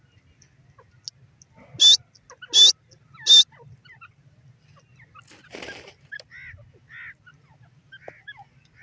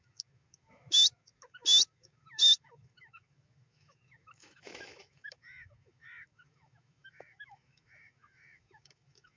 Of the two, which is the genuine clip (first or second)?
first